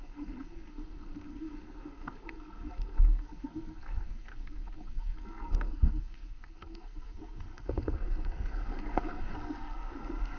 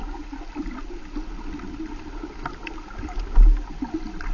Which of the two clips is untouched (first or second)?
second